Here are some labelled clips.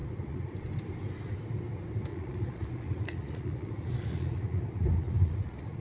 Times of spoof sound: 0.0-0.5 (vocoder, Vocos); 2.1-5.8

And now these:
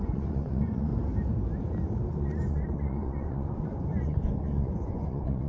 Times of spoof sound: 0.0-0.9 (vocoder, Vocos); 2.1-5.5

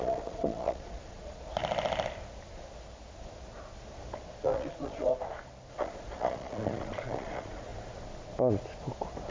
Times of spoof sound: 0.0-1.6 (vocoder, Vocos); 4.4-5.1; 5.7-7.7